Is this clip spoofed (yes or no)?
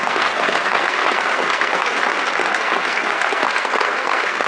yes